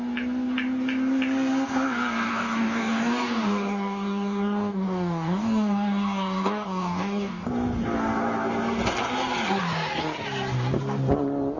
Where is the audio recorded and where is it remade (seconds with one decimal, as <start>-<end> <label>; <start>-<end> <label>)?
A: 0.0-2.3 recorded; 2.3-7.5 remade; 7.5-11.6 recorded